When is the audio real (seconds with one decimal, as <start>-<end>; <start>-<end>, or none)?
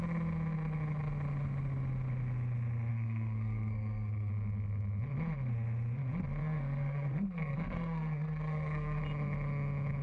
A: 0.0-2.9; 4.3-6.4; 9.0-10.0